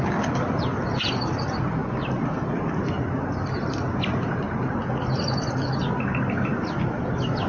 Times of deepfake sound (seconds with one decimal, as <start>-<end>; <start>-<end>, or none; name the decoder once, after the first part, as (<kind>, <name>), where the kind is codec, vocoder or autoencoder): none